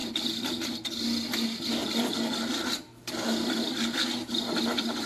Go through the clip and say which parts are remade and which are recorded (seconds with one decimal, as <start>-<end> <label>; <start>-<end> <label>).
0.0-5.1 recorded

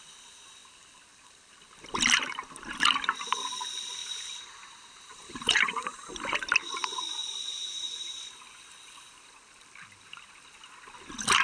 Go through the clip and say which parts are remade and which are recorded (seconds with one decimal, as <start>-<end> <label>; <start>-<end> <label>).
0.0-4.0 recorded; 4.0-6.1 remade; 6.1-7.2 recorded; 7.2-8.3 remade; 8.3-11.4 recorded